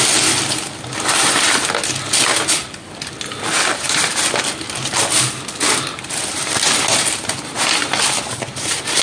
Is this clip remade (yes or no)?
no